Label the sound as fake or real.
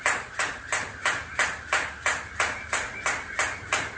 real